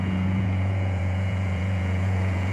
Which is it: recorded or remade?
remade